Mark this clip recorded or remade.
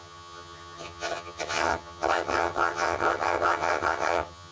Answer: remade